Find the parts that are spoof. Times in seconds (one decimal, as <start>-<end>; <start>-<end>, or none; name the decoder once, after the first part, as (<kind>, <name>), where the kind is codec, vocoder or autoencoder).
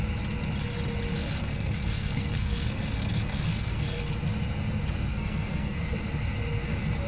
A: 1.4-4.1 (codec, SNAC); 5.1-5.8